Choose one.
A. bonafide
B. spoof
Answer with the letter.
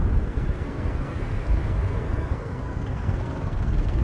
B